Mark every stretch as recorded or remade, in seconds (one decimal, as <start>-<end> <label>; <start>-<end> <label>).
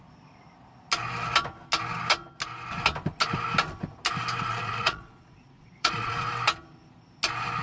0.0-4.5 recorded; 4.5-6.1 remade; 6.1-7.6 recorded